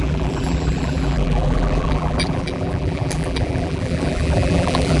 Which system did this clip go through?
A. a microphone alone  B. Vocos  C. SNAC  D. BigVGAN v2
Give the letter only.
D